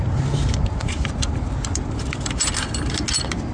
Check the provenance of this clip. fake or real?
real